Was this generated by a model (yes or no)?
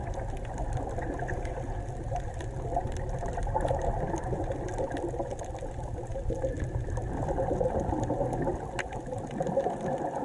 no